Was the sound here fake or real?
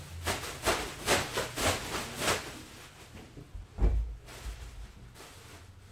real